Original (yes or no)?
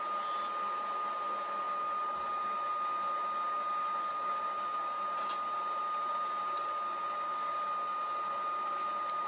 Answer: yes